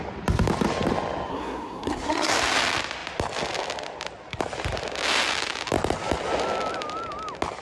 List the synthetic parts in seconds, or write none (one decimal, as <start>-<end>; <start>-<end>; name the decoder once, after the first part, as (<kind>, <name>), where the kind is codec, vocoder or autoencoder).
1.3-2.3 (codec, SNAC)